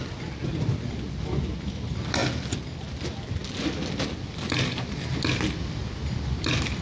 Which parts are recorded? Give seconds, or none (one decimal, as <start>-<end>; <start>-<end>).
0.0-6.8